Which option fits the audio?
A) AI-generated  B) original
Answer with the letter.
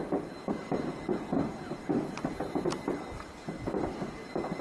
B